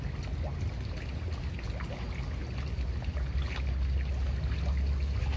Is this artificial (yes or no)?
no